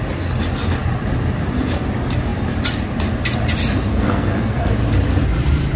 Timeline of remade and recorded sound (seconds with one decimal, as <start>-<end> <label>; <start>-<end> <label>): 0.0-3.9 recorded; 3.9-4.7 remade; 4.7-5.8 recorded